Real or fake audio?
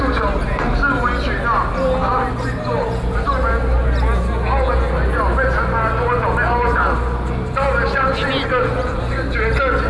real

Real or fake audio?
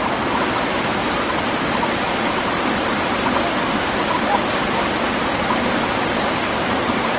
real